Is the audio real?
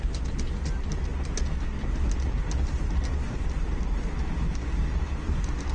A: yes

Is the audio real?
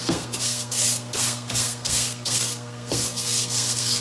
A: no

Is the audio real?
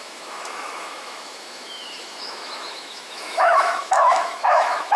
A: no